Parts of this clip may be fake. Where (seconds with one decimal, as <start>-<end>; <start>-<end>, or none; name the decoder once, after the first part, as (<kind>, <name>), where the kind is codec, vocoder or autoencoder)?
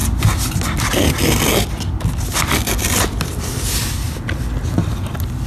none